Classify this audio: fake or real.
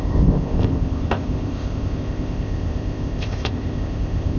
fake